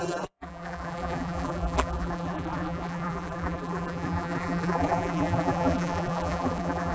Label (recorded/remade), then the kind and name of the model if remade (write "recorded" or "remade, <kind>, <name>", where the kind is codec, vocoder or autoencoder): remade, vocoder, BigVGAN v2